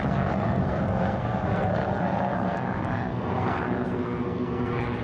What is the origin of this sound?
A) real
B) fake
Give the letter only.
B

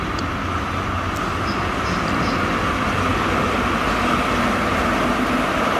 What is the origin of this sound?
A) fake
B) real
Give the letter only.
B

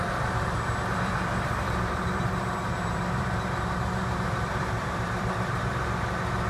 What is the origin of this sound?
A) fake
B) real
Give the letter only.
A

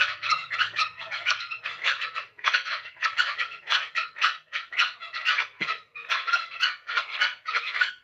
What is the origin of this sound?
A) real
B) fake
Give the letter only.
B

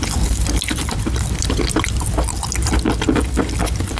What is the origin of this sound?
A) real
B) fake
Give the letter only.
A